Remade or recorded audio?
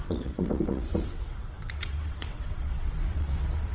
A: remade